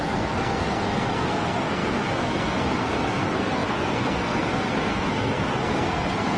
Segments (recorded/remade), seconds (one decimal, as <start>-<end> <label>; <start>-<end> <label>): 0.0-6.4 remade